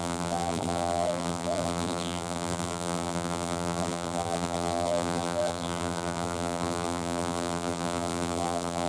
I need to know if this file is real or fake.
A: fake